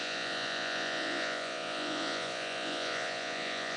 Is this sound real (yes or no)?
no